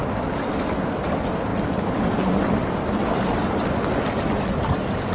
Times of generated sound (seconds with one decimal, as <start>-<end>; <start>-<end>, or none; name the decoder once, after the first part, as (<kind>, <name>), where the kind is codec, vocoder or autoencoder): none